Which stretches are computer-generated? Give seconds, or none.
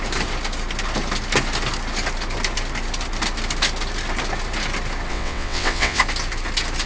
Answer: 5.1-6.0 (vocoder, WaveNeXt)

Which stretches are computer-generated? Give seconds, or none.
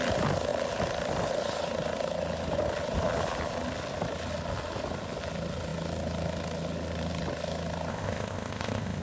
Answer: 7.9-9.0 (codec, ZipCodec)